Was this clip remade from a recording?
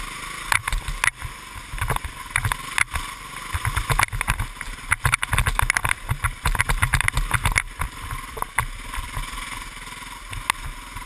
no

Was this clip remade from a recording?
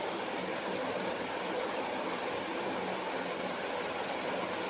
no